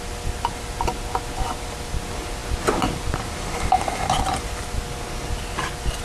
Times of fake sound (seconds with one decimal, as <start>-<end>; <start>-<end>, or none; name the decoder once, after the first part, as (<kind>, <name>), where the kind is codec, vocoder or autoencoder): none